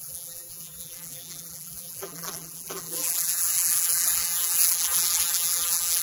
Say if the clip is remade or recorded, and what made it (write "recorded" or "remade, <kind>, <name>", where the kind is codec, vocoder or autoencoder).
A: remade, vocoder, BigVGAN v2